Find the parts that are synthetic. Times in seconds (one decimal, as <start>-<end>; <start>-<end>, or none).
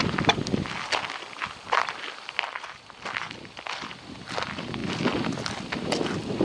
none